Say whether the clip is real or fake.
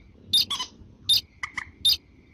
real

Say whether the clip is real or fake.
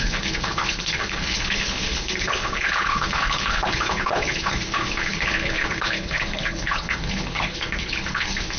fake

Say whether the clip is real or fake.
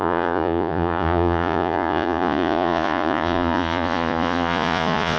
fake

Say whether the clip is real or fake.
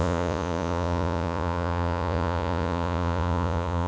fake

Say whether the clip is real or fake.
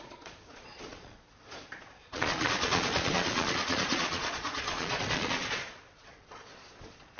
fake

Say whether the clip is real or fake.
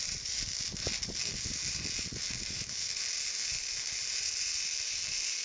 real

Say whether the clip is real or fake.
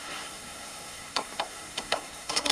fake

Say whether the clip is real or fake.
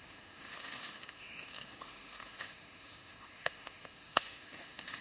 fake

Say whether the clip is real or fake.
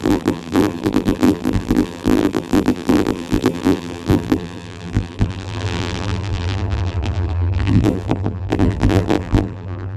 fake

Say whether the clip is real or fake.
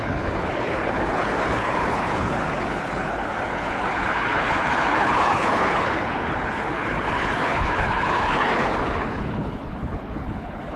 fake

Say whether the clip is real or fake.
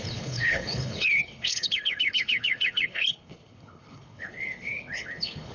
fake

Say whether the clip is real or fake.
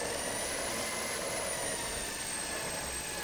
real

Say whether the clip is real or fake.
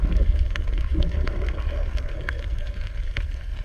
fake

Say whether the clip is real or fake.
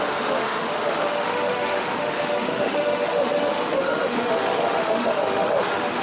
fake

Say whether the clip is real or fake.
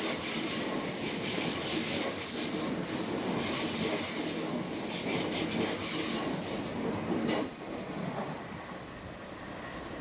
real